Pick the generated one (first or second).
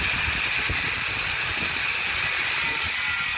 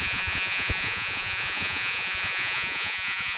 second